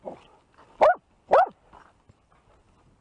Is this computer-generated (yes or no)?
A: no